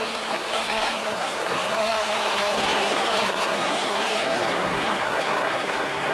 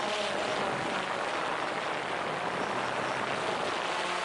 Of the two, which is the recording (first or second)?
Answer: second